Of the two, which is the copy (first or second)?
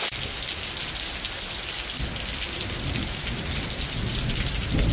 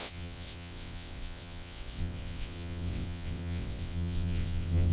second